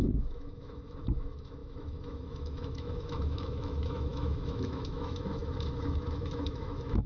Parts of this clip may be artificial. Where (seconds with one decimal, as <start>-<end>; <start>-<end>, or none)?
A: 0.0-7.1

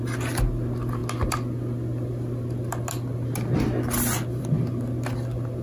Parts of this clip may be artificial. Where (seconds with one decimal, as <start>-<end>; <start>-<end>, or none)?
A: none

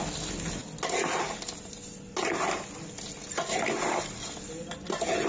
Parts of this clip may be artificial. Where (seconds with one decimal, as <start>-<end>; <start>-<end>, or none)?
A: 3.2-4.4

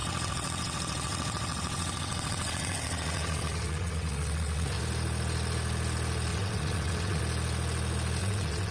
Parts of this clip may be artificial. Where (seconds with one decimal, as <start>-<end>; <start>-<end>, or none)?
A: 0.0-4.8; 6.3-7.2; 8.2-8.7

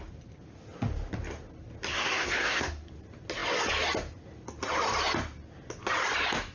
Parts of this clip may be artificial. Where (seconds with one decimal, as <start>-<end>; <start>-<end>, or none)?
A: 1.9-2.9

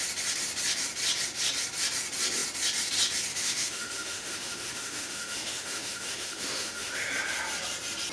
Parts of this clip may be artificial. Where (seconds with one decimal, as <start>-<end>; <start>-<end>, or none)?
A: 3.3-7.1